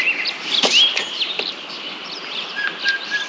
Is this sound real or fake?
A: real